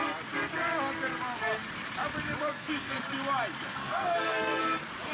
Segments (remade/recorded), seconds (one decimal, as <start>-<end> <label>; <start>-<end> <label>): 0.0-2.5 recorded; 2.5-3.0 remade; 3.0-3.7 recorded; 3.7-4.6 remade; 4.6-5.1 recorded

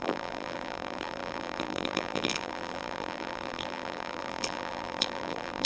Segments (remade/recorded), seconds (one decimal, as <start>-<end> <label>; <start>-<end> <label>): 0.0-5.6 remade